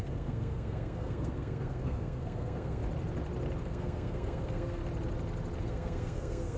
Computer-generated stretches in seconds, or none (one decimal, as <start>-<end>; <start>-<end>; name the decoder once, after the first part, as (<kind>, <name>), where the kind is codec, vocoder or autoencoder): 0.0-2.8 (codec, SNAC); 3.6-4.8; 5.6-6.6